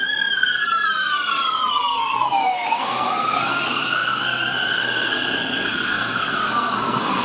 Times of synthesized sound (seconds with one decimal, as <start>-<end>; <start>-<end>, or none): 0.0-7.2